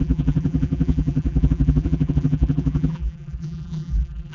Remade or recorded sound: remade